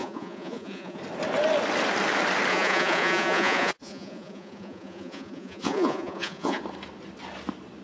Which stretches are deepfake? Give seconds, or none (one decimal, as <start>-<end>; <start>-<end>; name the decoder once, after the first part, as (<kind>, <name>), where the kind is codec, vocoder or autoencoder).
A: 0.0-1.0 (vocoder, Vocos); 2.5-6.6